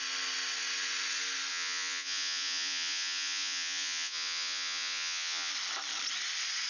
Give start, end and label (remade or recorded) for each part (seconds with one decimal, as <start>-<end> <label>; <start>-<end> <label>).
0.0-1.5 recorded; 1.5-5.5 remade; 5.5-6.7 recorded